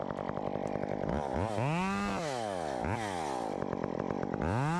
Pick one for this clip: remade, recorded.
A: recorded